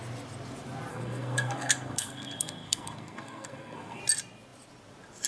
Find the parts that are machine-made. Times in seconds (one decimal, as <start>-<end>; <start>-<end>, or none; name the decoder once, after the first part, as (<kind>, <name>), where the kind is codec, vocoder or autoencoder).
0.9-4.0 (codec, SNAC)